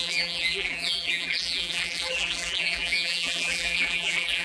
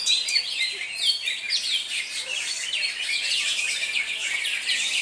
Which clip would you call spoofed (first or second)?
first